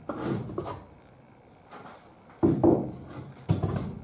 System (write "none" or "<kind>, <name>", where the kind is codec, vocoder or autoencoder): none